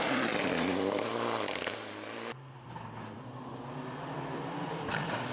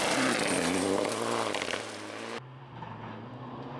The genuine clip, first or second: second